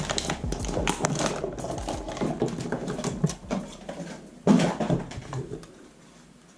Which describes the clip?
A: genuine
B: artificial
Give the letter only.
A